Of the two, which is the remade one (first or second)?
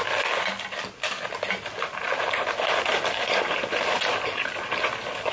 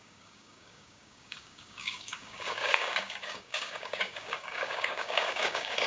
second